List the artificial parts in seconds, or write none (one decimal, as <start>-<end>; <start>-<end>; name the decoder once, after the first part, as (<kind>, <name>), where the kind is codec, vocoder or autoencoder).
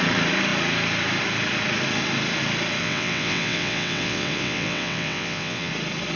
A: 2.8-5.7 (vocoder, WaveNeXt)